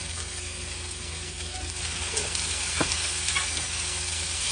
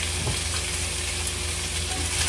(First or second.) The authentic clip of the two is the second